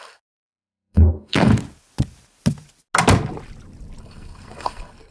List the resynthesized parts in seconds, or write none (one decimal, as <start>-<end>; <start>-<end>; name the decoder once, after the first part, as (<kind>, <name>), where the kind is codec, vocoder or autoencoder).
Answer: 0.0-1.5 (codec, SNAC); 4.0-5.1